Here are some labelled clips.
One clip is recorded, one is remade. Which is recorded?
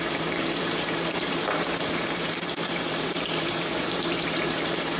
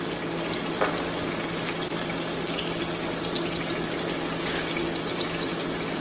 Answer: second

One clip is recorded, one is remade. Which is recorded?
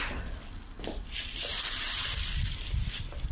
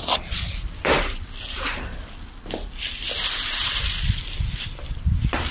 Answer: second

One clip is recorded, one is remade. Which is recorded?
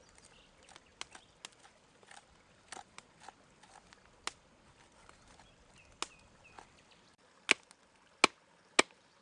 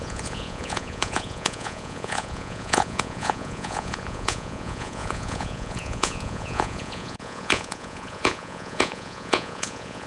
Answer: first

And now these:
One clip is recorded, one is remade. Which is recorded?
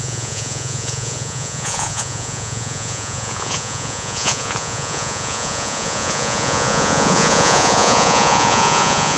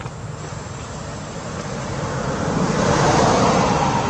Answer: second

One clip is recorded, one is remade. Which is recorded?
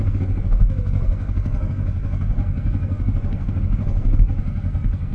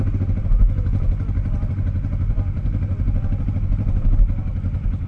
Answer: second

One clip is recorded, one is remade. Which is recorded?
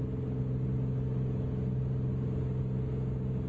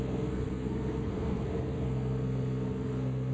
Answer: first